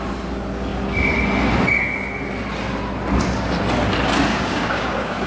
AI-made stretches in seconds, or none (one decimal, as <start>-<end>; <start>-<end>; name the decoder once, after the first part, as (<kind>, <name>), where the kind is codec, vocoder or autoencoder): 4.3-5.3 (codec, DAC)